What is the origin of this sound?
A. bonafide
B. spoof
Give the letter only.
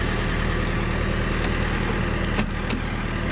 A